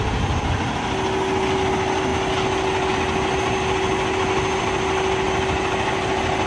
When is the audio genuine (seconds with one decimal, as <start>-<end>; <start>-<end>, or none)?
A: 0.0-6.5